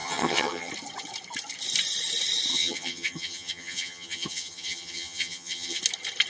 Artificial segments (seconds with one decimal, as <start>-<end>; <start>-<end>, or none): 0.0-0.7; 2.5-5.8